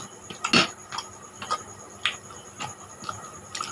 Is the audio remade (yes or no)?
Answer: no